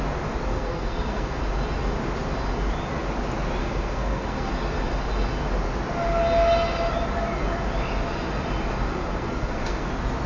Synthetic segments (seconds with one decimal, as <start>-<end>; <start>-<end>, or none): 0.5-1.4; 3.6-4.5; 8.9-9.9